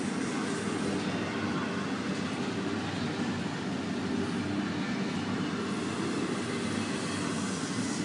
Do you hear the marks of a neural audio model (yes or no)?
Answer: no